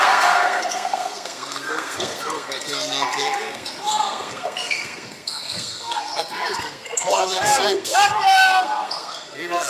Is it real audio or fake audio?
fake